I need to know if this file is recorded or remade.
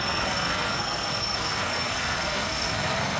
remade